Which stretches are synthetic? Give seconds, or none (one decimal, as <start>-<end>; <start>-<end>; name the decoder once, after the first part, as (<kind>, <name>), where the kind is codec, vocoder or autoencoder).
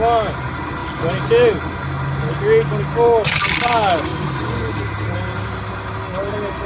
4.1-5.9 (vocoder, BigVGAN v2)